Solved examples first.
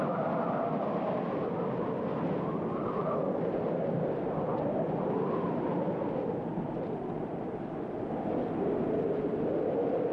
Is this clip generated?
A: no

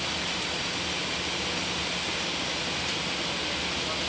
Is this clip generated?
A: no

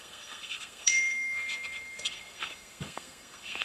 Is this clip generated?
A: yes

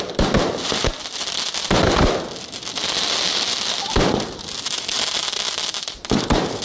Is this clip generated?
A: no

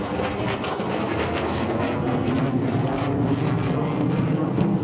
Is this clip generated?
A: yes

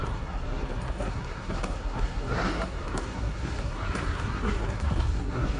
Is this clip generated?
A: yes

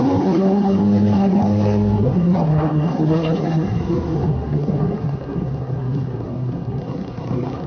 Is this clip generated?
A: yes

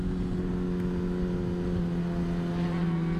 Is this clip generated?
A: no